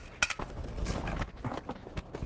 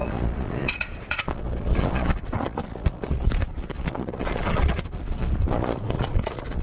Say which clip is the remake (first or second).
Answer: second